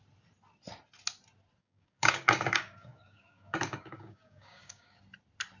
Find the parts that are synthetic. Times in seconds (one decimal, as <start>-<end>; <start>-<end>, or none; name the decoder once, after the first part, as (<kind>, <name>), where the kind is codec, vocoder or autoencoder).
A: 1.6-5.0 (codec, DAC)